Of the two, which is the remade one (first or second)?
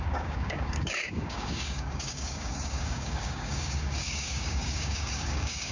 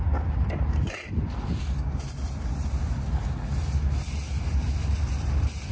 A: first